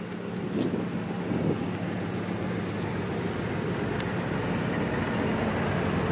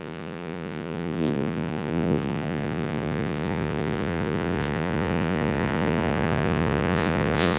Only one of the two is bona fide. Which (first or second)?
first